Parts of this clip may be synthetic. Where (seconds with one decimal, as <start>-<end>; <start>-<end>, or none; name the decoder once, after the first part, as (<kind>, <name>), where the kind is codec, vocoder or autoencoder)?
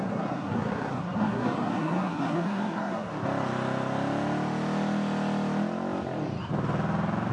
0.0-3.1 (codec, SNAC)